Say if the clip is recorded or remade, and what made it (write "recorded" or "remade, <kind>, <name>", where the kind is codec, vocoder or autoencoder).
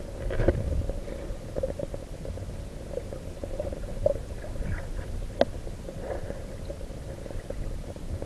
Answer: recorded